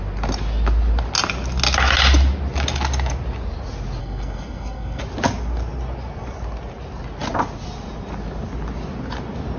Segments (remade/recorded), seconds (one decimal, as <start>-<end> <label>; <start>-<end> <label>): 0.0-4.0 recorded; 4.0-5.0 remade; 5.0-9.6 recorded

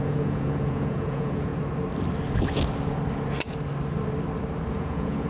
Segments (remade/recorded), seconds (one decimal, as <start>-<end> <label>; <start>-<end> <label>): 0.0-1.5 remade; 1.5-4.7 recorded; 4.7-5.3 remade

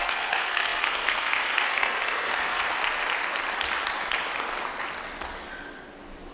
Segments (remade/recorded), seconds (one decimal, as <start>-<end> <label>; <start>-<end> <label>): 0.0-2.8 remade; 2.8-6.3 recorded

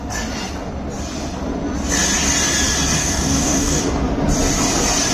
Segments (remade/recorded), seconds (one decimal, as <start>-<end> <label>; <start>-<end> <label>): 0.0-3.0 recorded; 3.0-3.8 remade; 3.8-5.1 recorded

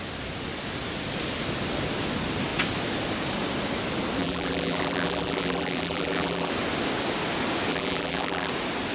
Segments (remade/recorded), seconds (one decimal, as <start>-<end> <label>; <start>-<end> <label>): 0.0-4.2 recorded; 4.2-6.5 remade; 6.5-7.7 recorded; 7.7-8.5 remade; 8.5-8.9 recorded